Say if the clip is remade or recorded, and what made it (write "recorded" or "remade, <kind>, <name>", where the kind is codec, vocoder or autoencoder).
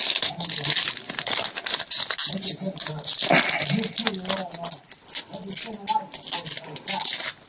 recorded